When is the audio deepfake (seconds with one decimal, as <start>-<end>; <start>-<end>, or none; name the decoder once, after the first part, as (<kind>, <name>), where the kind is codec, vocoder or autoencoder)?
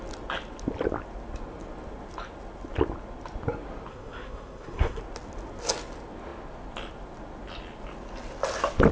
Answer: 3.9-5.0 (codec, SNAC)